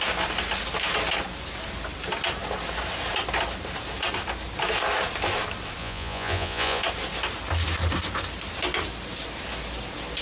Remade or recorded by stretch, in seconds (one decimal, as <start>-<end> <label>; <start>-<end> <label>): 0.0-5.8 recorded; 5.8-6.8 remade; 6.8-10.2 recorded